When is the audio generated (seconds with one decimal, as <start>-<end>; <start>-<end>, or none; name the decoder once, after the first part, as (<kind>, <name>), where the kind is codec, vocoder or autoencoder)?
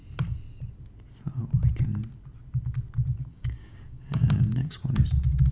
3.3-4.7 (codec, DAC)